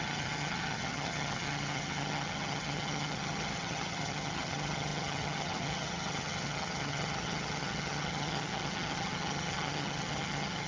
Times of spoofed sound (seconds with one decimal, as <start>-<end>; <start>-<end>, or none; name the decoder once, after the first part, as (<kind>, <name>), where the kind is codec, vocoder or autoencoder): 0.0-10.7 (vocoder, HiFi-GAN)